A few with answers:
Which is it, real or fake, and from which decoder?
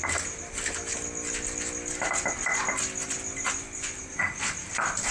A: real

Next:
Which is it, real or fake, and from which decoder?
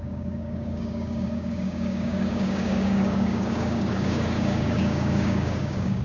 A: fake, codec, DAC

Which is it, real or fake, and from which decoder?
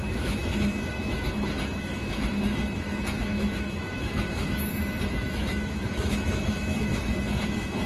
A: fake, autoencoder, DAC-VAE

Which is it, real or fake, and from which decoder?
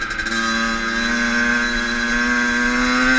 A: real